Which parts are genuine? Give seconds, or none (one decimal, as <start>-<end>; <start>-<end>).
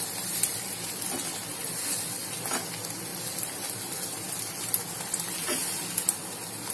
0.0-6.7